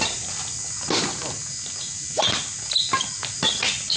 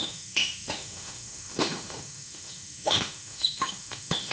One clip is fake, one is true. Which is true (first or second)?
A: first